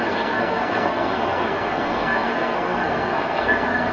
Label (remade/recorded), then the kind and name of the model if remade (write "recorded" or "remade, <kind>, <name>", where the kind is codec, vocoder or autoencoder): remade, codec, SNAC